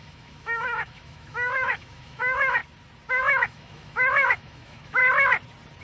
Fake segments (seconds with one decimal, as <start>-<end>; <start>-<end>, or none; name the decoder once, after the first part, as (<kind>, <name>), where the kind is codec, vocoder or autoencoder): 0.0-2.6 (autoencoder, DAC-VAE); 3.1-5.0